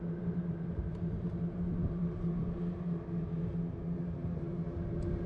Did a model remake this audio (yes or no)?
yes